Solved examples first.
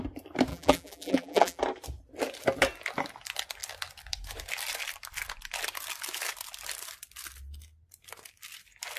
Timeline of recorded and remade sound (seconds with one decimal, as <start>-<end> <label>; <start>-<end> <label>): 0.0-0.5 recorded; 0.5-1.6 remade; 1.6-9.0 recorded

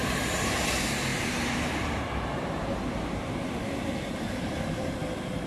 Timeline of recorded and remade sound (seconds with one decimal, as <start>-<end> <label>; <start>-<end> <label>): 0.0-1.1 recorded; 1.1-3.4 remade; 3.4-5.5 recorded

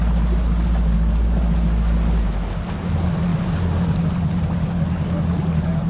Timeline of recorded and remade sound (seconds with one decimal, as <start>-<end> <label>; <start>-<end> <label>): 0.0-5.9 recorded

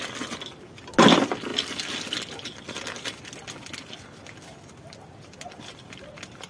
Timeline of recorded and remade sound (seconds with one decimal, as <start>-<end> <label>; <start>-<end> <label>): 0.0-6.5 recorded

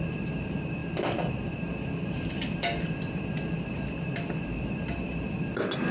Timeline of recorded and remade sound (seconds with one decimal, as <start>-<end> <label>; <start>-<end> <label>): 0.0-5.9 recorded

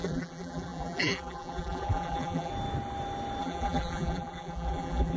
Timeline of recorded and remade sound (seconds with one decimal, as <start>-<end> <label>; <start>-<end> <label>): 0.0-2.5 remade; 2.5-3.4 recorded; 3.4-5.2 remade

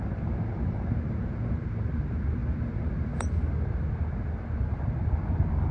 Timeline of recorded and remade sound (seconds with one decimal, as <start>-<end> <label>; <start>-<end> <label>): 0.0-5.7 recorded

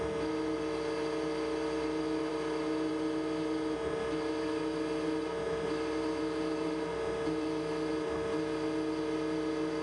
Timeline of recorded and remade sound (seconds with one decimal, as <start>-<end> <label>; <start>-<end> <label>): 0.0-9.8 recorded